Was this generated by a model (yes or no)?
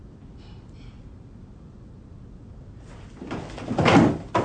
yes